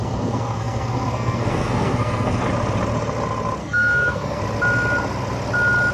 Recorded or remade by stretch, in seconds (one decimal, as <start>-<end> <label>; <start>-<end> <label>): 0.0-2.4 remade; 2.4-3.6 recorded; 3.6-4.4 remade; 4.4-5.9 recorded